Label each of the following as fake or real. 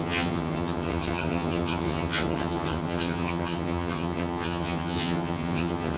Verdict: fake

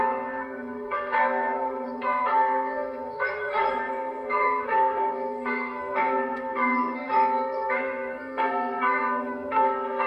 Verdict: fake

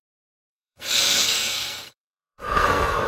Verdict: fake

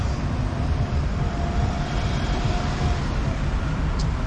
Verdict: fake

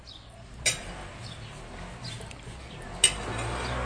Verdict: real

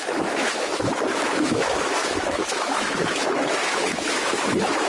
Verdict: fake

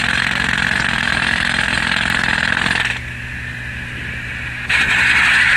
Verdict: real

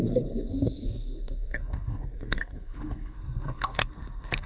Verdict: fake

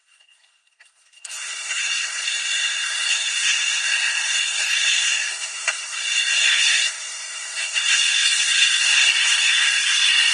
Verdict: fake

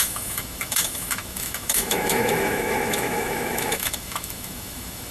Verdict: fake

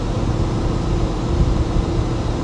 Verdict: real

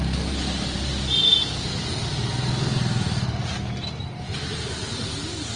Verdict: real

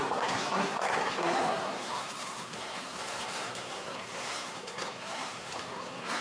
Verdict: fake